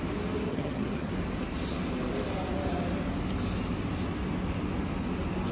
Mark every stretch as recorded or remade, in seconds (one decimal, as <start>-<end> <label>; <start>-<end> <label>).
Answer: 0.0-0.5 recorded; 0.5-1.1 remade; 1.1-5.5 recorded